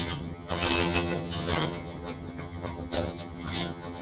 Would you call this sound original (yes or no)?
no